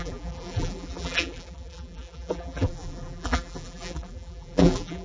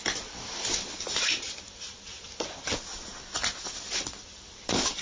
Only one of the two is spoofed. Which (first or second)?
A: first